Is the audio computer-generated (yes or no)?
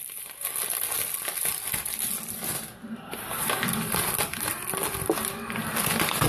no